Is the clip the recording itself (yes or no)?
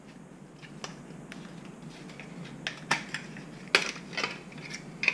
yes